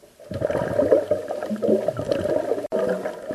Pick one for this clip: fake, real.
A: real